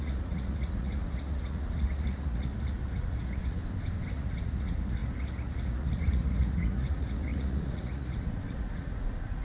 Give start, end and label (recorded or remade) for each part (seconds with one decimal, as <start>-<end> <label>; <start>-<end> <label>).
0.0-3.6 remade; 3.6-4.1 recorded; 4.1-9.4 remade